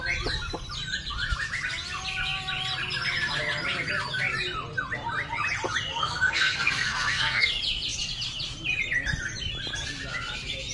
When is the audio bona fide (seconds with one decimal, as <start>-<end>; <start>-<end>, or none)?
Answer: 0.0-5.9; 7.5-10.7

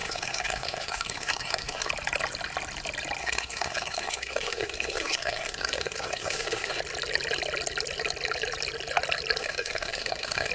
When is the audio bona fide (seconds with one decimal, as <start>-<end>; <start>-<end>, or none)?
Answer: 1.9-3.2; 6.8-9.4

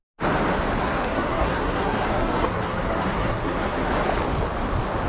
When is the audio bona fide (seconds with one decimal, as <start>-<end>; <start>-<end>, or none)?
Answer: 0.0-0.8; 3.9-5.1

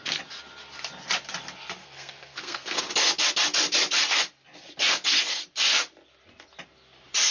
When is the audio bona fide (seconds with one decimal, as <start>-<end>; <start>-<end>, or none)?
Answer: 0.0-1.8; 2.8-7.3

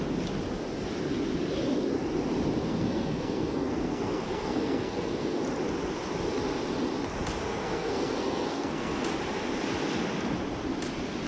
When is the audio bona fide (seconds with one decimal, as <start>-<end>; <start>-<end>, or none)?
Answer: 0.0-2.7; 5.4-7.5; 9.0-11.3